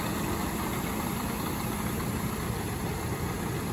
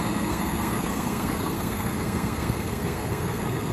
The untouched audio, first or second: first